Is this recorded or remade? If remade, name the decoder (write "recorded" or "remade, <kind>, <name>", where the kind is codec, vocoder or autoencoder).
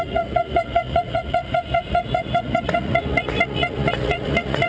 remade, vocoder, Vocos